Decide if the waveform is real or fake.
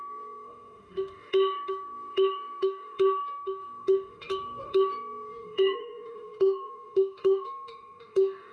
fake